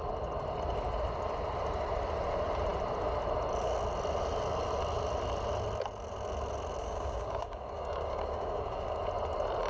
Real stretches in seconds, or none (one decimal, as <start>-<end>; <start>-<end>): 0.0-6.8; 9.0-9.7

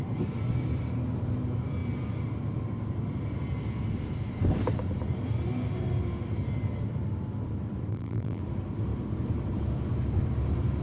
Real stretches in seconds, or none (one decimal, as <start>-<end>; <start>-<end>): 0.0-7.9; 8.4-10.8

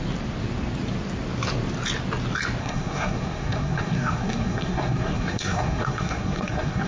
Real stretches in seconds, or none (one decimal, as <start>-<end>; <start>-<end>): 0.0-2.6

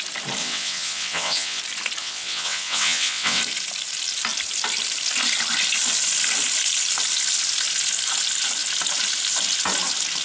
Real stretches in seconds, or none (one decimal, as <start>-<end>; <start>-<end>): 0.0-0.4; 1.6-2.0; 3.4-10.2

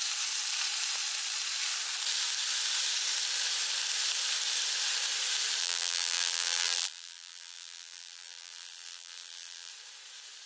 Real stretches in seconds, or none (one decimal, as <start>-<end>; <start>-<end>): 0.0-5.6; 9.7-10.5

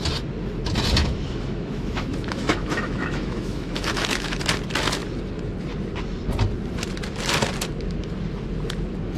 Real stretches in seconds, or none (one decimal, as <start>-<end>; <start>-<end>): 0.0-1.0; 4.4-9.2

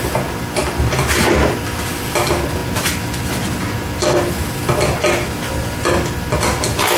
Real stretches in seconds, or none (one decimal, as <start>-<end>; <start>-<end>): 0.0-7.0

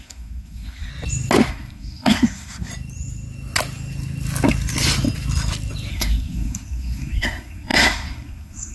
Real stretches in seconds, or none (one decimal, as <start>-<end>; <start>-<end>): 0.9-1.5; 2.7-5.9